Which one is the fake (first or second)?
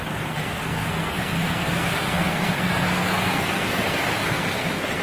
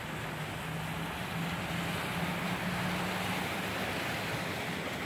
first